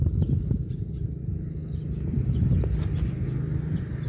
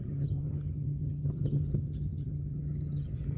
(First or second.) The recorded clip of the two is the first